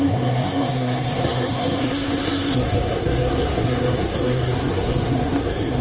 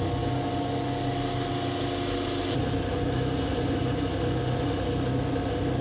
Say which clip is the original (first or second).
second